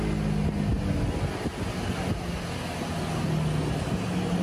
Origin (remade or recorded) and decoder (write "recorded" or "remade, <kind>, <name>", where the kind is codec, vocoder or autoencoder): recorded